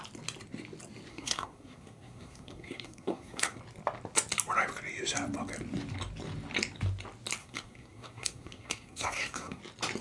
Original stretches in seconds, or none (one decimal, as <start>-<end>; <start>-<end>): 0.0-1.1; 3.6-7.4; 9.6-10.0